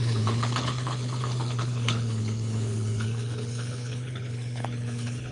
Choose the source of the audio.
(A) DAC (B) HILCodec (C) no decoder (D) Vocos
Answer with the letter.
B